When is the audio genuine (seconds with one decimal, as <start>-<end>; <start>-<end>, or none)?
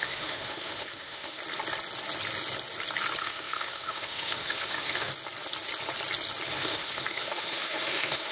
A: 1.4-3.2; 5.1-6.5